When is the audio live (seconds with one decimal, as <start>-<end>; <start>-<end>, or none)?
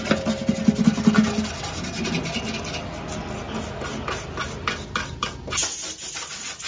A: 0.0-6.7